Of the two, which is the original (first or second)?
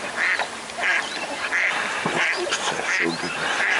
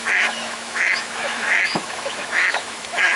first